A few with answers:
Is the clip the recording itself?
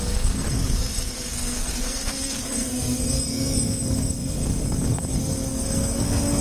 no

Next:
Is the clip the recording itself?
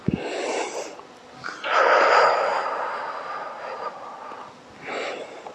yes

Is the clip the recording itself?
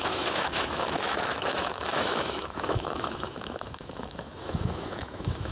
no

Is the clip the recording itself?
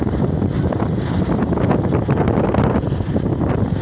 yes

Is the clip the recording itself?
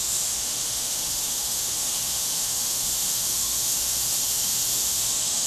no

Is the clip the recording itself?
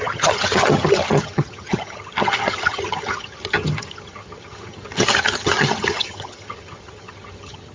no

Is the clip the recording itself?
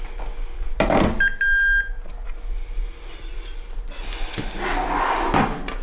yes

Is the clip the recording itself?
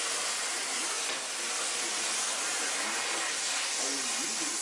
yes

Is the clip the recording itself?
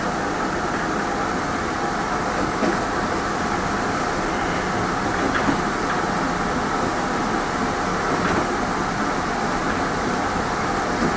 yes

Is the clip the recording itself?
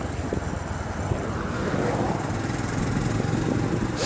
yes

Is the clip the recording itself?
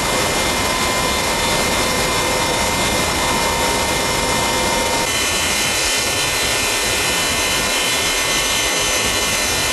yes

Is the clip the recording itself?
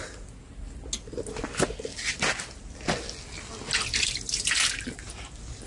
yes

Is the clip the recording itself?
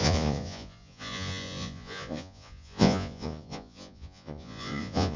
no